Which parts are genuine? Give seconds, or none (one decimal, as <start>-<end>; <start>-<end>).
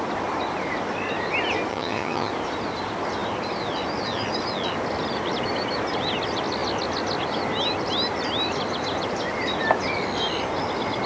0.0-1.7; 2.3-11.1